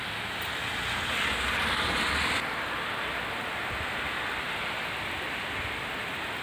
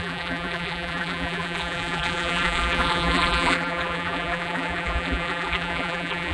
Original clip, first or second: first